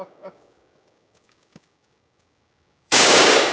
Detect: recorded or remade remade